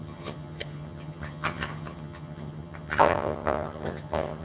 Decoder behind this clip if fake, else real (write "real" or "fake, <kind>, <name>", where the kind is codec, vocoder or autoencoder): fake, vocoder, HiFi-GAN